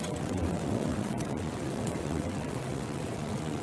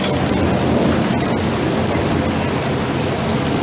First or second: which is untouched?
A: second